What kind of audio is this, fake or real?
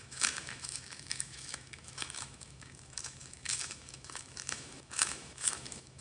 fake